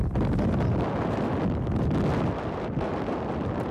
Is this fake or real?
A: real